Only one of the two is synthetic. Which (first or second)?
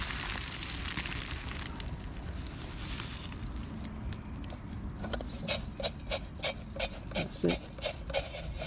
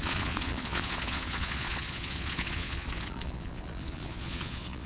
second